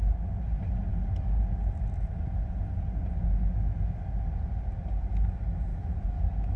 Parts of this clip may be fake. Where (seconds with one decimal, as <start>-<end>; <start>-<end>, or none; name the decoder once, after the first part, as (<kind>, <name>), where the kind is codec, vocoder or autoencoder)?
5.7-6.6 (autoencoder, DAC-VAE)